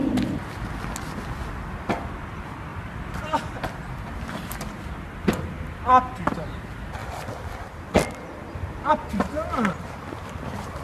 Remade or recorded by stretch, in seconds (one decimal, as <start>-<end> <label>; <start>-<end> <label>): 0.0-0.8 remade; 0.8-2.7 recorded; 2.7-4.9 remade; 4.9-7.0 recorded; 7.0-7.7 remade; 7.7-10.8 recorded